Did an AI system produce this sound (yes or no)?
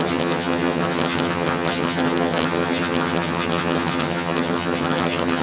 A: yes